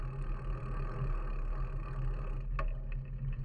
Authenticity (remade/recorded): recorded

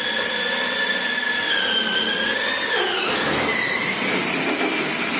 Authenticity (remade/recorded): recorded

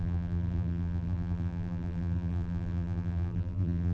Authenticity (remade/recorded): remade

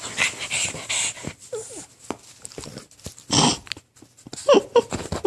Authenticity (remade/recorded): recorded